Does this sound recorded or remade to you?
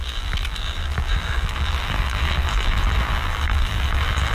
remade